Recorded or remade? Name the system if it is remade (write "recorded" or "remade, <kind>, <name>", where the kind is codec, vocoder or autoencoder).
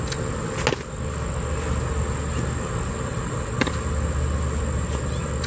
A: recorded